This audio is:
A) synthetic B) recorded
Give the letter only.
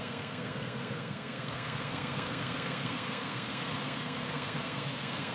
A